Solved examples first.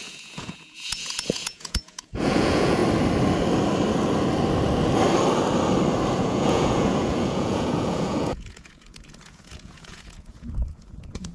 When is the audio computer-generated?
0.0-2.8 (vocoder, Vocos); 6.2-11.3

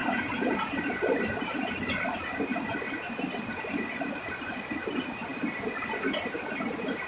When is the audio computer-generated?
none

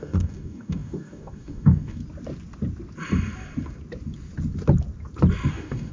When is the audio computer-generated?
0.0-2.0 (codec, DAC); 5.5-5.9

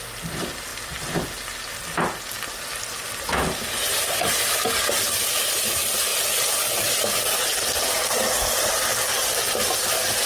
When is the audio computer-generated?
none